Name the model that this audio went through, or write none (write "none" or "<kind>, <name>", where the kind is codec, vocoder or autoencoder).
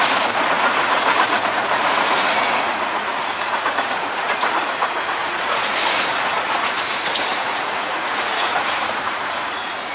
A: vocoder, Vocos